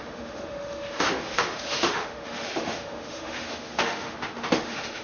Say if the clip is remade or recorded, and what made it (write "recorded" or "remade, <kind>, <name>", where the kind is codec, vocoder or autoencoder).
remade, autoencoder, DAC-VAE